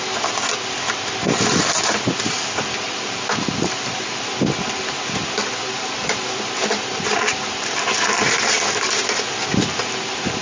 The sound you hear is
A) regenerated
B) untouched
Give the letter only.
B